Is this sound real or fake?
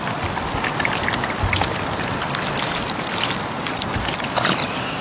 real